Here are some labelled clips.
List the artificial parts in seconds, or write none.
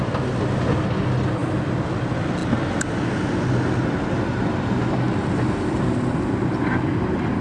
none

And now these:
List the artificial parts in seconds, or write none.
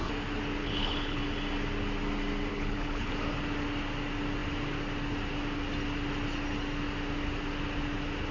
0.6-1.2 (codec, HILCodec); 2.5-3.1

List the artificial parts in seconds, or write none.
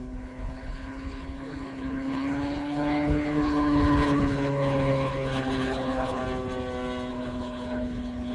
0.0-6.2 (codec, HILCodec); 7.1-8.3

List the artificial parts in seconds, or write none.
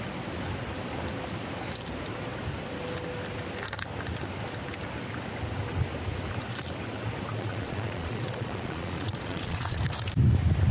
7.3-9.8 (vocoder, Vocos)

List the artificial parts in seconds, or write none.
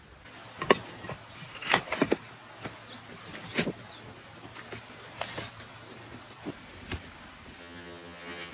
7.6-8.5 (vocoder, HiFi-GAN)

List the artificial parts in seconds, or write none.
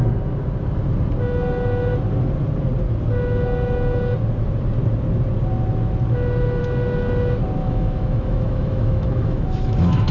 7.6-10.1 (autoencoder, DAC-VAE)